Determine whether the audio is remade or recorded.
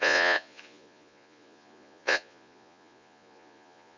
remade